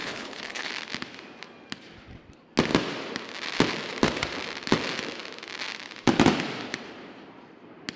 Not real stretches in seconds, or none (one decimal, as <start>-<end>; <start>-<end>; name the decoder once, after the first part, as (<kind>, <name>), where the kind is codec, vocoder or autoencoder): 0.0-0.7 (codec, HILCodec)